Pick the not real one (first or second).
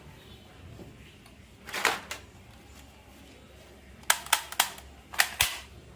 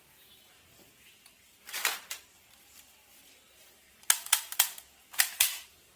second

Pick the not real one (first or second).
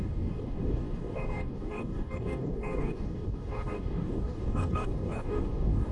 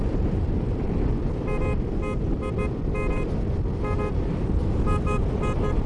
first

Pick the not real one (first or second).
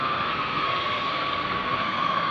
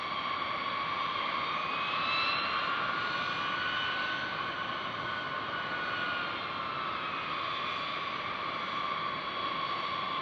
first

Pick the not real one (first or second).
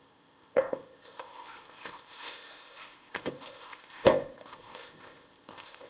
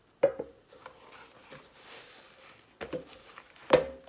first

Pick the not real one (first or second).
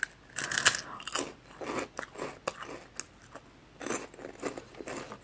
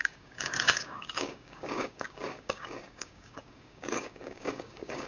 second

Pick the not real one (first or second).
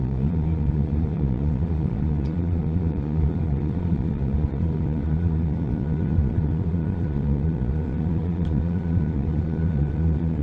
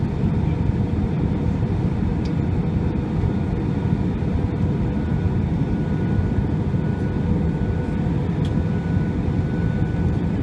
first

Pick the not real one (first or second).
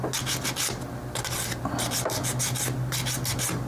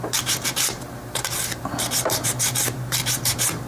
second